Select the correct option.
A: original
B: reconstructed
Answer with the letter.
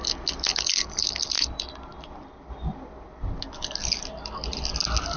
A